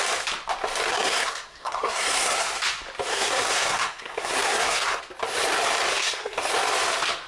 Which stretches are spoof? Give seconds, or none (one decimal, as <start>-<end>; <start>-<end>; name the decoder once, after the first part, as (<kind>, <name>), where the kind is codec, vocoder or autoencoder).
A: 0.9-2.5 (codec, SNAC); 3.1-5.0; 5.9-6.5